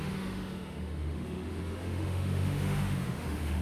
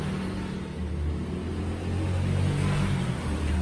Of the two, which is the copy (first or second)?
first